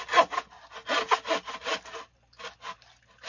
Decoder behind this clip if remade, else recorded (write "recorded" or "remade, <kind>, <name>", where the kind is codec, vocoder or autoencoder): recorded